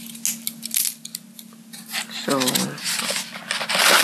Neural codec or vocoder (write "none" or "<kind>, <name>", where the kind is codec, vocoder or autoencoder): none